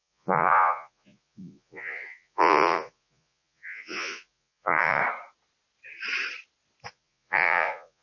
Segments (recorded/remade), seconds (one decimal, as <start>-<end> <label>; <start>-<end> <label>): 0.0-5.0 remade; 5.0-6.9 recorded; 6.9-8.0 remade